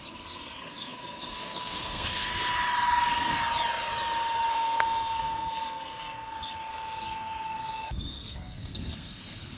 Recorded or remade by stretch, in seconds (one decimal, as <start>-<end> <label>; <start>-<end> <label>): 0.0-2.3 remade; 2.3-4.5 recorded; 4.5-9.6 remade